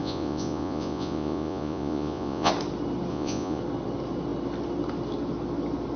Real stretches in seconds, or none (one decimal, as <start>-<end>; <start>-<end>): 2.5-3.1; 3.6-6.0